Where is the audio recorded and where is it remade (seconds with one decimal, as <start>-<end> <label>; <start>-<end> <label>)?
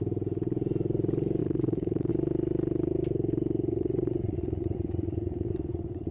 0.0-1.4 recorded; 1.4-2.1 remade; 2.1-3.7 recorded; 3.7-6.1 remade